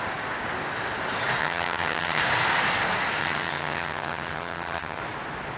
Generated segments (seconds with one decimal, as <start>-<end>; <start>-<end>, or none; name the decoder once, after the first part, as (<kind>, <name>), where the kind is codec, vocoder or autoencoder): 1.4-2.2 (vocoder, HiFi-GAN); 3.2-5.0

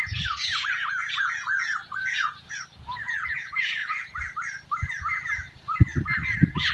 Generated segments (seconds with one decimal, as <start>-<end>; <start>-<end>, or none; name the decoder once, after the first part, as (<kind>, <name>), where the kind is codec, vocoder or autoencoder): 0.0-3.8 (vocoder, Vocos)

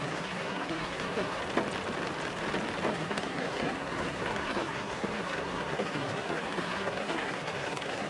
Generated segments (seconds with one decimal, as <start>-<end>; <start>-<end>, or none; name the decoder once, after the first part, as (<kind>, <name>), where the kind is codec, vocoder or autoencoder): 0.0-1.4 (codec, SNAC); 2.9-8.1

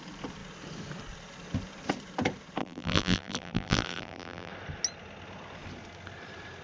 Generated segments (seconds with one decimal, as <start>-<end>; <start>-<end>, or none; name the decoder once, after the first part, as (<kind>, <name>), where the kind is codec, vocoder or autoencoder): 2.6-4.5 (vocoder, BigVGAN v2)

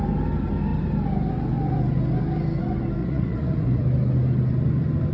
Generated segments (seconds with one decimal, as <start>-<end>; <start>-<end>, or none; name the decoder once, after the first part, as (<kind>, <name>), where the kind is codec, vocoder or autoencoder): 3.0-3.8 (vocoder, Vocos)

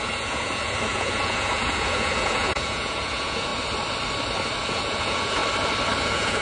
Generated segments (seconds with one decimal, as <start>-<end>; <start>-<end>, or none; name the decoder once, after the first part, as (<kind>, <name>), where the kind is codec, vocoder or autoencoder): 0.0-3.5 (vocoder, Vocos); 4.6-5.4; 6.0-6.4